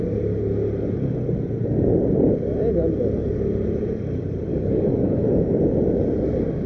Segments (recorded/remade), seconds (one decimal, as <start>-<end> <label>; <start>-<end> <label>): 0.0-4.5 recorded; 4.5-5.3 remade; 5.3-6.7 recorded